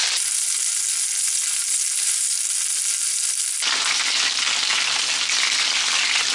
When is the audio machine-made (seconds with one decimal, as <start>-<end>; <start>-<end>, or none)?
none